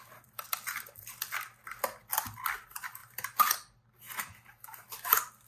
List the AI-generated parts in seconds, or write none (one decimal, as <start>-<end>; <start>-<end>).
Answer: none